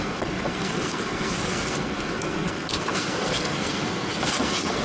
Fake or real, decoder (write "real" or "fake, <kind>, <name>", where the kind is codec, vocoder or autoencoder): fake, codec, SNAC